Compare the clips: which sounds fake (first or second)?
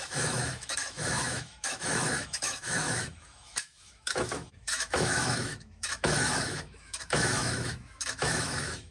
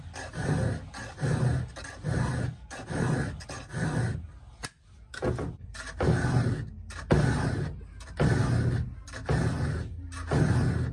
first